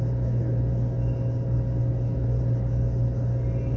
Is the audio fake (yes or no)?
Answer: no